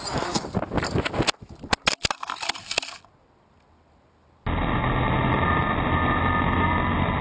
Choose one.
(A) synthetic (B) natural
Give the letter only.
B